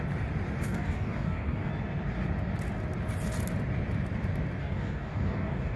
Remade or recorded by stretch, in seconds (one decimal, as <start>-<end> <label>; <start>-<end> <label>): 0.0-0.6 recorded; 0.6-1.7 remade; 1.7-4.6 recorded; 4.6-5.8 remade